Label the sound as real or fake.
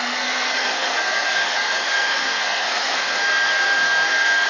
fake